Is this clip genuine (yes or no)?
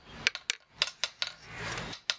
yes